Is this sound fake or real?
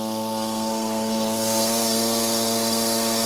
fake